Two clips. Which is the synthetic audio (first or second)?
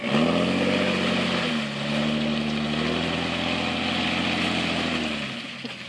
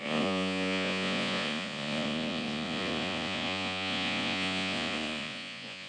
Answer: second